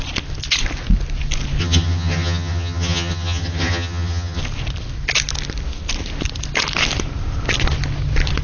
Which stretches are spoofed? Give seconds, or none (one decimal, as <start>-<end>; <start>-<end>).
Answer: 1.6-4.4